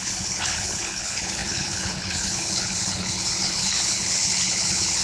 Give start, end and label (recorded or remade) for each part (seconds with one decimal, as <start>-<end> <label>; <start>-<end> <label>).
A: 0.0-5.0 remade